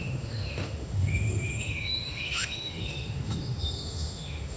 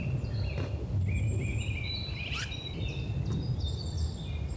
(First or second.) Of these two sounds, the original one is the second